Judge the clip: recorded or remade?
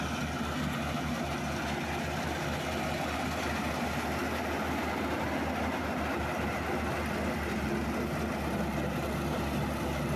recorded